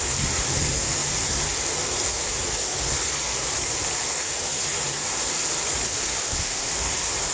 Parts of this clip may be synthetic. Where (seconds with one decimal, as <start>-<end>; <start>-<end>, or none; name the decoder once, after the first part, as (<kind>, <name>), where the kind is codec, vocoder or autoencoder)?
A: 6.2-6.7 (codec, ZipCodec)